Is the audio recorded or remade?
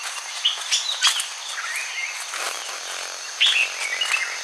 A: recorded